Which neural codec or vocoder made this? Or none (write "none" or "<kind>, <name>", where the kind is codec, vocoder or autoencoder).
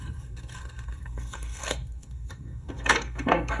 codec, SNAC